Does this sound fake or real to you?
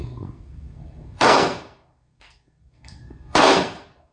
fake